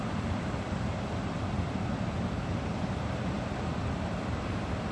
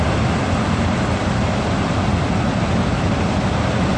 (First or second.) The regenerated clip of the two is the first